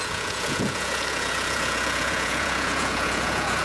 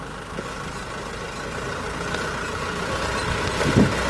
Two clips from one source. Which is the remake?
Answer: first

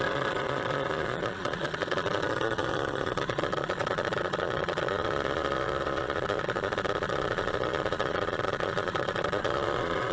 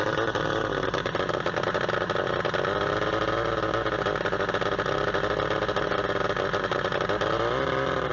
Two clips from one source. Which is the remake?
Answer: first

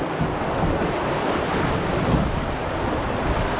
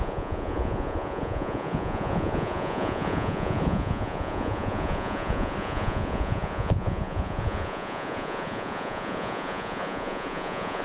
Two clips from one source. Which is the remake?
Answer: second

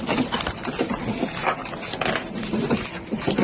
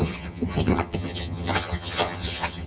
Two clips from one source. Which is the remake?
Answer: second